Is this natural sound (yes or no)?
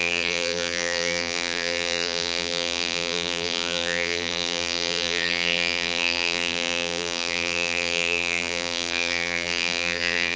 no